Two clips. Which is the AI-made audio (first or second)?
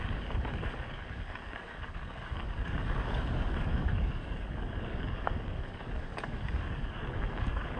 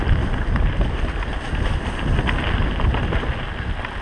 first